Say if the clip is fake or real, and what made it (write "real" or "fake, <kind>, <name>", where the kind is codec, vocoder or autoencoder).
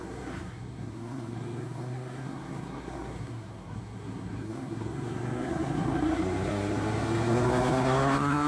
fake, codec, SNAC